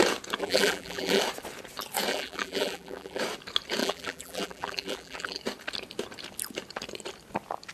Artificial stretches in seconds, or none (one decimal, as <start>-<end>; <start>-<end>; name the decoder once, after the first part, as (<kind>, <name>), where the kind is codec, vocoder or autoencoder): 0.4-1.2 (vocoder, BigVGAN v2); 2.1-3.2; 3.8-5.4